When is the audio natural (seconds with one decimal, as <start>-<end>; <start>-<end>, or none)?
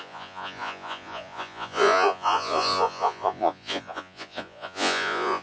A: none